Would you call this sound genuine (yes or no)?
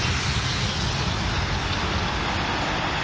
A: yes